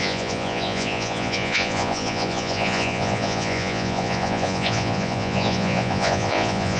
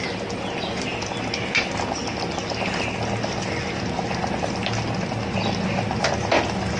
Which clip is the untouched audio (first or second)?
second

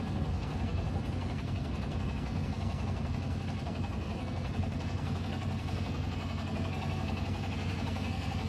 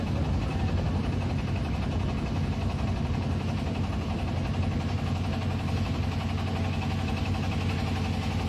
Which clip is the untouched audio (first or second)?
second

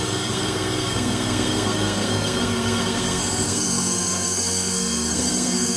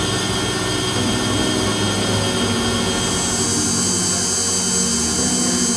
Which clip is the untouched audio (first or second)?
second